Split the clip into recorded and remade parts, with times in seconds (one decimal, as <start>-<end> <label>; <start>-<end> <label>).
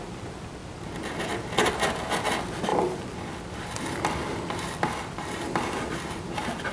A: 0.0-0.6 remade; 0.6-1.7 recorded; 1.7-6.7 remade